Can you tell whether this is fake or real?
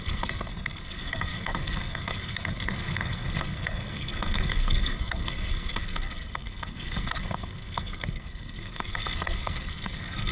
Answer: fake